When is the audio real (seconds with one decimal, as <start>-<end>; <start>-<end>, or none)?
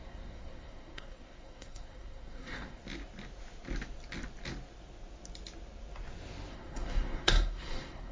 2.8-6.5